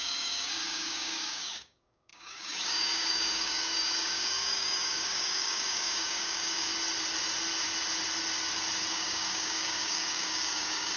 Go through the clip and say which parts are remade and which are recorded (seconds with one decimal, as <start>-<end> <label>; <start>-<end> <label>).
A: 0.0-6.7 remade; 6.7-8.9 recorded; 8.9-11.0 remade